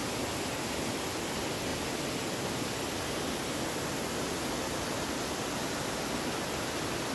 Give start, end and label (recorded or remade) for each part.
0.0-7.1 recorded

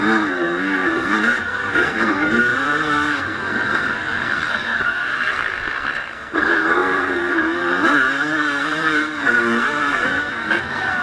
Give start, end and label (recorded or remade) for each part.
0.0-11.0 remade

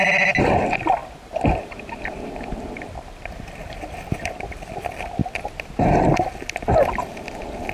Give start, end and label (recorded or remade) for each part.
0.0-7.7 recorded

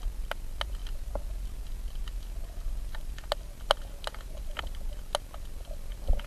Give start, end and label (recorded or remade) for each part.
0.0-6.3 recorded